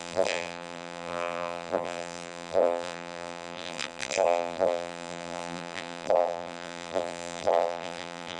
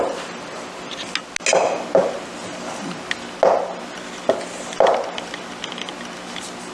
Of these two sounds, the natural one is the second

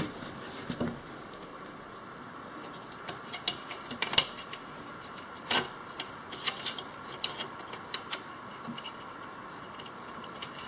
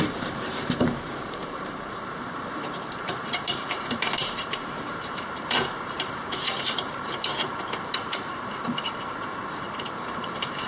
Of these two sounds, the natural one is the first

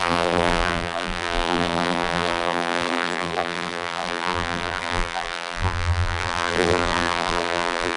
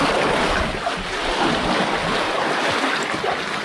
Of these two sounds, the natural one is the second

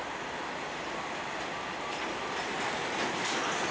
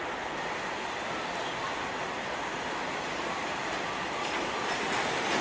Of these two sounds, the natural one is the first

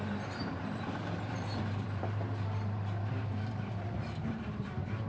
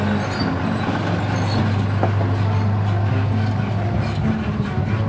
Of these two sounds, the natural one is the second